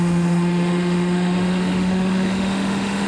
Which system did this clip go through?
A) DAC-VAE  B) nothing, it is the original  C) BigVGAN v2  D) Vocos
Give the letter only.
A